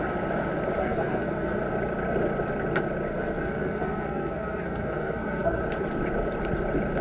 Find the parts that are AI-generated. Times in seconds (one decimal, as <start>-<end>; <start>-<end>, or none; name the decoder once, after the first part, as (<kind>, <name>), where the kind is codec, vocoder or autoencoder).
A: 0.8-1.6 (codec, SNAC); 3.1-5.6